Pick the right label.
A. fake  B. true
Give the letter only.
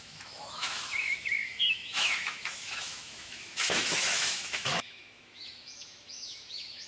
A